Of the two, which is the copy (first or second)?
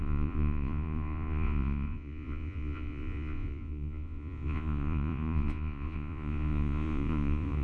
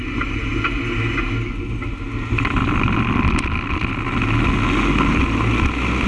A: first